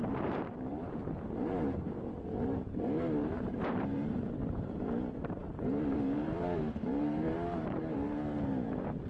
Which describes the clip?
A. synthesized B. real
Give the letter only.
A